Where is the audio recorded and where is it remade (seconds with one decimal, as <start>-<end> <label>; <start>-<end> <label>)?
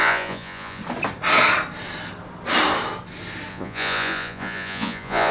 0.0-0.8 remade; 0.8-3.5 recorded; 3.5-5.3 remade